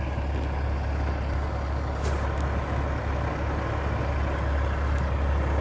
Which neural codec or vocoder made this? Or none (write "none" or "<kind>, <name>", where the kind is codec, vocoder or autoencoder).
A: none